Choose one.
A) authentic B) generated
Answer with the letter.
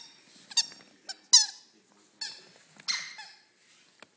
A